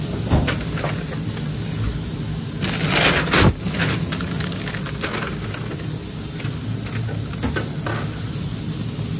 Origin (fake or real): real